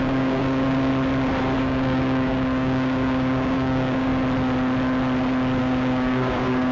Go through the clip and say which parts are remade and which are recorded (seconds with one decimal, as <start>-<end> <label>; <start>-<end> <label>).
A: 0.0-0.9 remade; 0.9-1.6 recorded; 1.6-4.1 remade; 4.1-5.6 recorded; 5.6-6.7 remade